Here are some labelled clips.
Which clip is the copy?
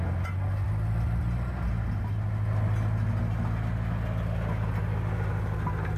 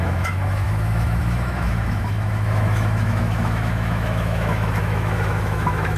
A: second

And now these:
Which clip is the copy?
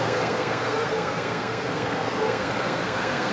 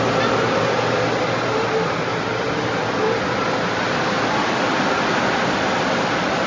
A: first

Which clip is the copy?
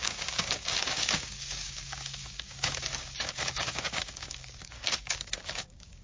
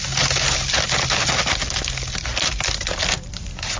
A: first